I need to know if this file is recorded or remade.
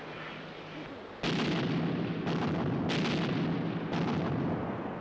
recorded